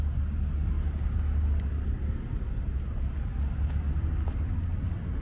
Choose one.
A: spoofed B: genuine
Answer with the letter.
B